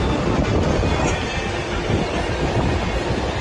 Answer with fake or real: real